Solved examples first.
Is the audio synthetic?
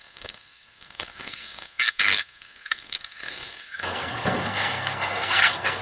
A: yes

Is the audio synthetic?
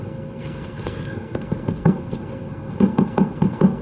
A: yes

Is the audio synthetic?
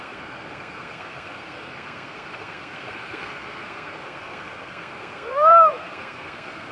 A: yes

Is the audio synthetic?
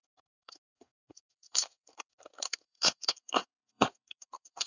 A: yes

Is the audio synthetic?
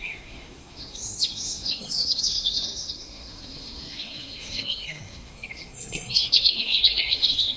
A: yes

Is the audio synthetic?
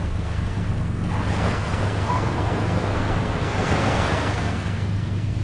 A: yes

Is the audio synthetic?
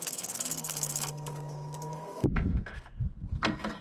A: yes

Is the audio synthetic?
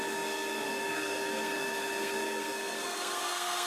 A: yes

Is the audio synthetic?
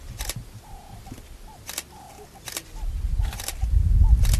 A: no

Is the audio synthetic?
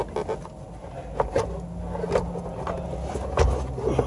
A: no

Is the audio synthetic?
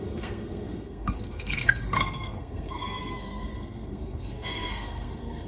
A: yes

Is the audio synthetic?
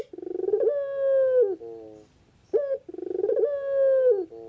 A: no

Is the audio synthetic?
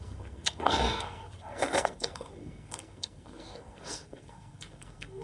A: yes